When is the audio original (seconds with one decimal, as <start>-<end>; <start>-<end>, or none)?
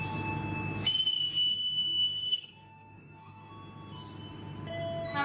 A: 0.0-1.5; 3.5-5.2